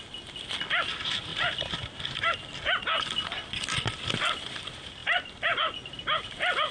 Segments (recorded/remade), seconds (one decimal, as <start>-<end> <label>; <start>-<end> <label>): 0.0-6.7 recorded